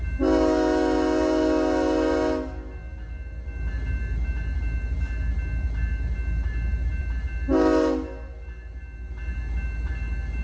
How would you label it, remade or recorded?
recorded